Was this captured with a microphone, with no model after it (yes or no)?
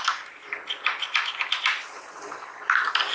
yes